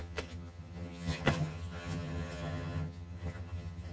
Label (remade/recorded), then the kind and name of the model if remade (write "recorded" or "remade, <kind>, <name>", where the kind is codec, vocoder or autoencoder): remade, vocoder, HiFi-GAN